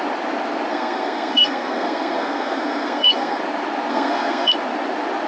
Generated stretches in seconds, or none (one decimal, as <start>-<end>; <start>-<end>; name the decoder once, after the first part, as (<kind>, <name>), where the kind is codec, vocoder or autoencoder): 0.7-3.4 (codec, SNAC); 3.9-4.5